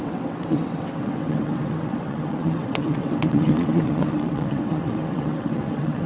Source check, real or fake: fake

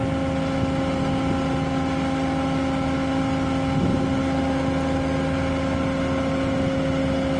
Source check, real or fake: real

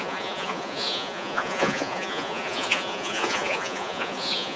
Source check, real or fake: fake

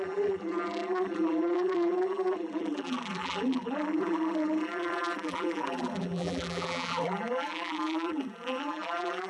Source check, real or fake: fake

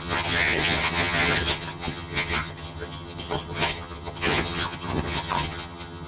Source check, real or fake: fake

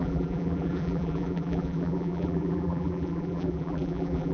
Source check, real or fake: fake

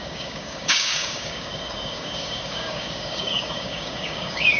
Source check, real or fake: fake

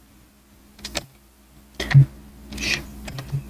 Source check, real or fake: real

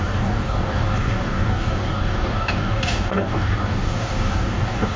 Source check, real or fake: fake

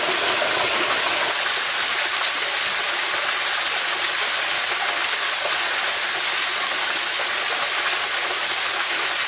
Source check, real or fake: real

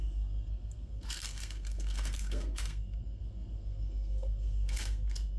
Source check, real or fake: fake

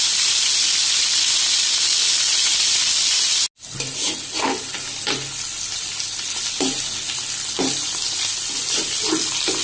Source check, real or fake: real